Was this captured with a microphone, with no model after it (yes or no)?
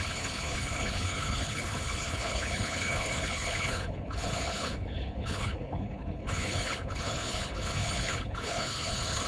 no